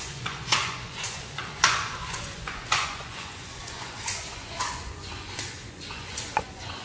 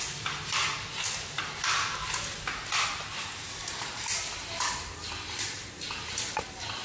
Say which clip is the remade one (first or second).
first